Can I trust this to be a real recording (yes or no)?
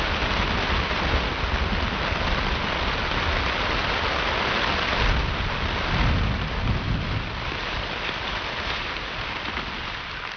yes